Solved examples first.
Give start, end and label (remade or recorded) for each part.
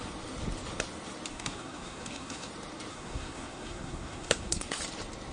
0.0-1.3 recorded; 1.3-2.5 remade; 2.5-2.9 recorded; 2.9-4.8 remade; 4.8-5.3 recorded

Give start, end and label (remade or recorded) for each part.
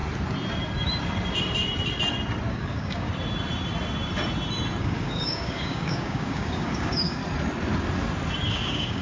0.0-2.5 recorded; 2.5-3.1 remade; 3.1-4.8 recorded; 4.8-7.2 remade; 7.2-8.5 recorded; 8.5-9.0 remade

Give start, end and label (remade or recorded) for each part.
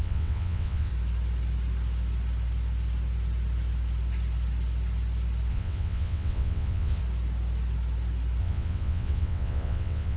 0.0-0.9 remade; 0.9-5.5 recorded; 5.5-7.0 remade; 7.0-8.4 recorded; 8.4-10.2 remade